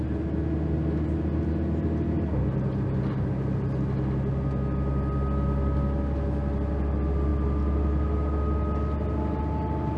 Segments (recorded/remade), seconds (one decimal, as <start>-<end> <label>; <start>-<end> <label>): 0.0-10.0 recorded